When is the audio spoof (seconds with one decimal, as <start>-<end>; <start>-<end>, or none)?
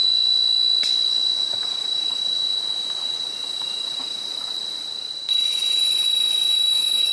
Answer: none